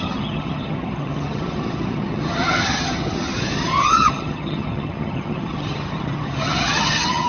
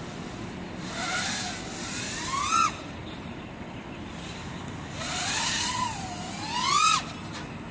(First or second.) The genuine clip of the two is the second